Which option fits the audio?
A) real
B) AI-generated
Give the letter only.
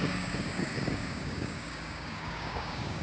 B